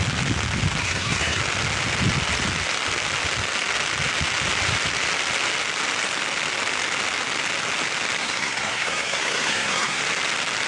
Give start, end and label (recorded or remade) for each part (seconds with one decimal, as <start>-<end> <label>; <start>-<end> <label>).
0.0-0.8 recorded; 0.8-1.4 remade; 1.4-8.2 recorded; 8.2-10.0 remade; 10.0-10.7 recorded